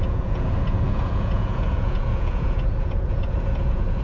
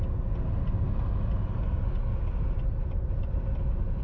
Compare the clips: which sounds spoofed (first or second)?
first